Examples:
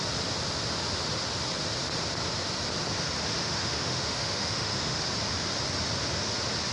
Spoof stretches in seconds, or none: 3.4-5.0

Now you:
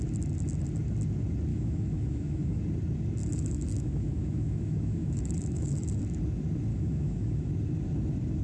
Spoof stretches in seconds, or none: 1.5-2.6; 3.2-6.0; 6.7-7.5